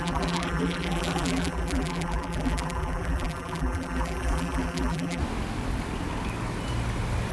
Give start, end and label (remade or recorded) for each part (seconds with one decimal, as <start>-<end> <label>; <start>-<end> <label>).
0.0-5.2 remade; 5.2-7.3 recorded